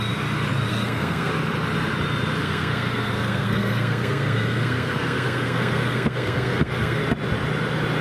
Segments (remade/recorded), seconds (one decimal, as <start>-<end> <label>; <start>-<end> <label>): 0.0-0.7 recorded; 0.7-1.3 remade; 1.3-2.4 recorded; 2.4-7.0 remade; 7.0-8.0 recorded